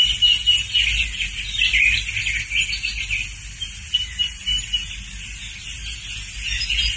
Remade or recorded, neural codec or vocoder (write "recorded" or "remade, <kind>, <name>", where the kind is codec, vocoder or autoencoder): recorded